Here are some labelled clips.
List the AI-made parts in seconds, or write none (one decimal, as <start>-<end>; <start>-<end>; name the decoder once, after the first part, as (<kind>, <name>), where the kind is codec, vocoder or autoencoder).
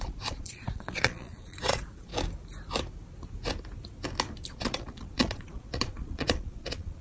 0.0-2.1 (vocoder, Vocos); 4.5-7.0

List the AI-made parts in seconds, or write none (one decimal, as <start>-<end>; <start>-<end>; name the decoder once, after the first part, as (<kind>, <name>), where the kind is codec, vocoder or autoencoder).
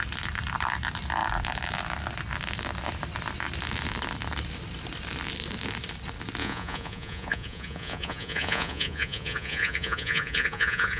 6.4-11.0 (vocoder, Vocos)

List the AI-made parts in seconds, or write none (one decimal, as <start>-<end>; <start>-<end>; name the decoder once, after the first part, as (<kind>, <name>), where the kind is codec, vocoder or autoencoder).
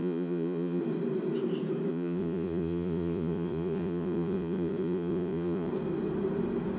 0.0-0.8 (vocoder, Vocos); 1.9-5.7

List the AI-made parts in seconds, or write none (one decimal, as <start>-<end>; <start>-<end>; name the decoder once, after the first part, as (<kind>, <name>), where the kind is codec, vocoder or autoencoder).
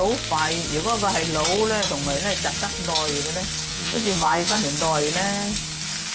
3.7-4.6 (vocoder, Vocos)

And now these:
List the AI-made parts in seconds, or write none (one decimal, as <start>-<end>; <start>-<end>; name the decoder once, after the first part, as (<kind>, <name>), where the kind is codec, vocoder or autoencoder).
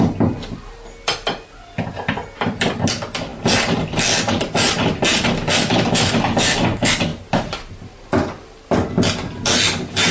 none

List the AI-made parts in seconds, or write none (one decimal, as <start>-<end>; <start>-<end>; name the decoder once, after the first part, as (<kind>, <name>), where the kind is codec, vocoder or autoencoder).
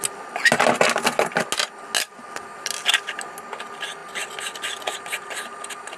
none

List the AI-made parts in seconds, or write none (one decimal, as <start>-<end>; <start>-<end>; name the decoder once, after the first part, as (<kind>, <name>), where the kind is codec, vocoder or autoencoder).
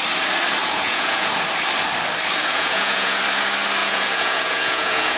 0.6-1.3 (vocoder, Vocos); 2.4-3.2; 3.8-5.2